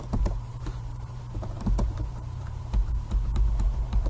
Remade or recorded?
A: remade